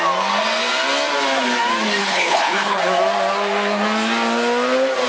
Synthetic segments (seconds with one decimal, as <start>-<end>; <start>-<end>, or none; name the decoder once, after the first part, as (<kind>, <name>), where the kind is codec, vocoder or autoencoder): 2.0-2.8 (codec, HILCodec)